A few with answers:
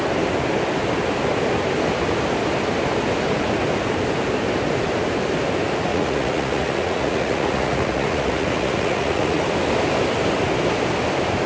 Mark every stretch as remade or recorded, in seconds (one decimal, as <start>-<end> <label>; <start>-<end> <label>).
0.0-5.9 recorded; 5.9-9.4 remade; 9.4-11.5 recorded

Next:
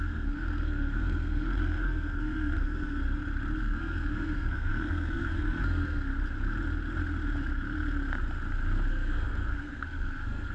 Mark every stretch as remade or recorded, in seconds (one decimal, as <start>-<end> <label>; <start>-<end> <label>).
0.0-3.0 remade; 3.0-3.6 recorded; 3.6-6.1 remade; 6.1-8.9 recorded; 8.9-10.5 remade

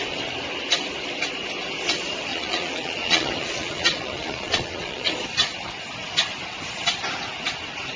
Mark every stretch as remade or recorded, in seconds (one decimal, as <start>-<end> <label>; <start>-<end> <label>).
0.0-2.3 recorded; 2.3-5.1 remade; 5.1-8.0 recorded

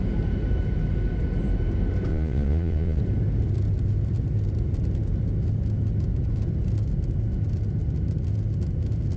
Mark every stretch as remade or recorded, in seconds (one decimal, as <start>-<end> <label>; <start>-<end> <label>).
0.0-2.1 recorded; 2.1-3.0 remade; 3.0-9.2 recorded